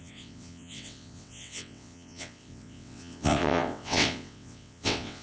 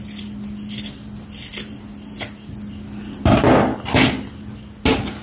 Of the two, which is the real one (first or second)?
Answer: second